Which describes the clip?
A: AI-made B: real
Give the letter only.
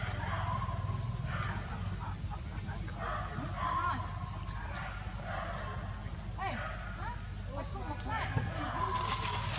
B